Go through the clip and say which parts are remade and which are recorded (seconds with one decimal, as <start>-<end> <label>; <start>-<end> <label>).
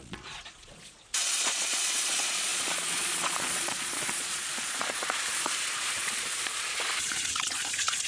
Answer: 0.0-8.1 remade